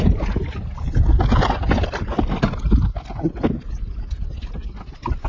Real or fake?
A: real